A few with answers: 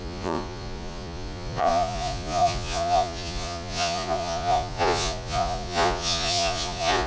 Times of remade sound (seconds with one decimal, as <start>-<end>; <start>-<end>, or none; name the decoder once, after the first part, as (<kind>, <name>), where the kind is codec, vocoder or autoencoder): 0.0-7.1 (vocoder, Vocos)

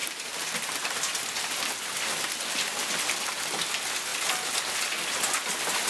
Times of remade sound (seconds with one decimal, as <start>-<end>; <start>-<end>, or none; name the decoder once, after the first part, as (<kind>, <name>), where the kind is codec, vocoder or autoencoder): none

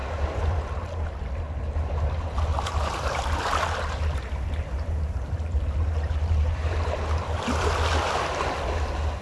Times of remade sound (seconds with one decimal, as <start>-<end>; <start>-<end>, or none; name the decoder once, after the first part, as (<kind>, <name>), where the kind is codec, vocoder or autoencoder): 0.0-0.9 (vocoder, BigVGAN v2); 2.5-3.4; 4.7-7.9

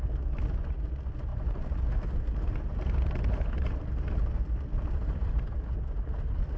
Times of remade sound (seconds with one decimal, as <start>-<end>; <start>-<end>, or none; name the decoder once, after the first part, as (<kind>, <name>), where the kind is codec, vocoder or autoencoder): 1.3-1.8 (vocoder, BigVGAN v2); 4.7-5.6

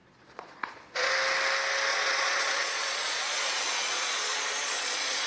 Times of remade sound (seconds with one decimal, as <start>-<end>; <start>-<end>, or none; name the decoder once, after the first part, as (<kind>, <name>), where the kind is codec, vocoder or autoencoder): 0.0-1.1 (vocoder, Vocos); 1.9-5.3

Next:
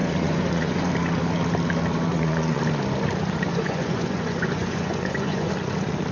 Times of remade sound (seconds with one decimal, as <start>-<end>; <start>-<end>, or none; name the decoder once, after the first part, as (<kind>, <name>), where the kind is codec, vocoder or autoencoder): 0.0-0.9 (vocoder, Vocos); 2.1-2.6; 3.5-5.5

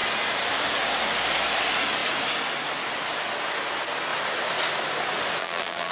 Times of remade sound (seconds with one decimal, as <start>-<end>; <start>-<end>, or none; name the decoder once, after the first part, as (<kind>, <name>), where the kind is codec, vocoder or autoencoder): 5.4-5.9 (vocoder, BigVGAN v2)